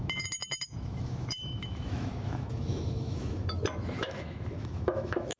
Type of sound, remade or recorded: remade